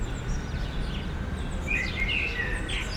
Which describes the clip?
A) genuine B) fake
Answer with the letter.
A